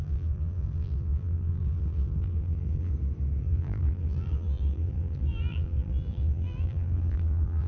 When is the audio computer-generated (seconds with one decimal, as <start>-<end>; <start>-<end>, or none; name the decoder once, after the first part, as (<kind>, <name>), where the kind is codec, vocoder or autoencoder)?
0.0-2.9 (vocoder, BigVGAN v2); 3.4-7.7